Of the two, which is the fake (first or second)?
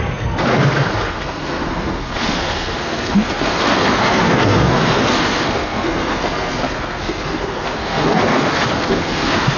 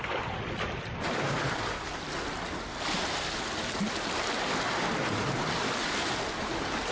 first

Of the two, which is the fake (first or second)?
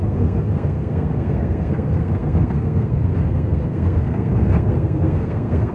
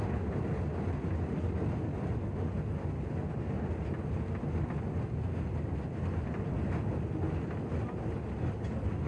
first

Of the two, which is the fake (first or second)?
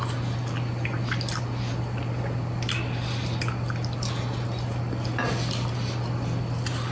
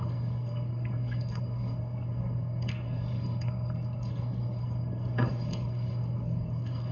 second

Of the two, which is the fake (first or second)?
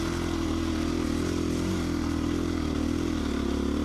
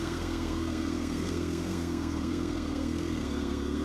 second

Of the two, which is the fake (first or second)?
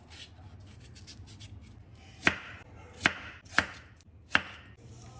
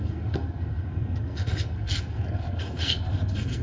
second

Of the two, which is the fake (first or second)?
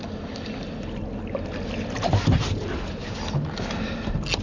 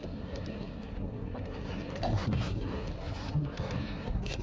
second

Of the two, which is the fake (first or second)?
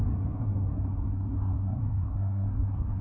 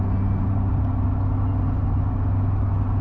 first